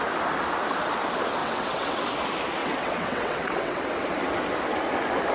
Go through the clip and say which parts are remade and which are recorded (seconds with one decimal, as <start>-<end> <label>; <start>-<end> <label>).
0.0-1.4 recorded; 1.4-2.0 remade; 2.0-2.6 recorded; 2.6-3.8 remade; 3.8-5.3 recorded